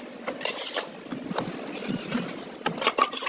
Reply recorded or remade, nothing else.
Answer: recorded